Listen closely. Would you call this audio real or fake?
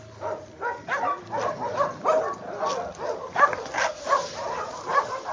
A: real